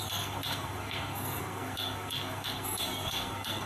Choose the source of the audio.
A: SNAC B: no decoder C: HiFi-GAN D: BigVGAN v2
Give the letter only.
A